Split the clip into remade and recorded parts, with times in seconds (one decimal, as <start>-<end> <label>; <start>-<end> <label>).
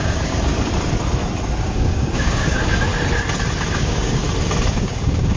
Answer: 0.0-0.5 remade; 0.5-1.6 recorded; 1.6-2.9 remade; 2.9-3.7 recorded; 3.7-4.2 remade; 4.2-4.7 recorded; 4.7-5.4 remade